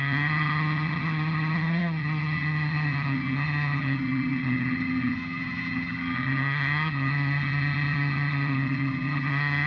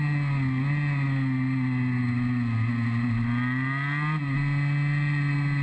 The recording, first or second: second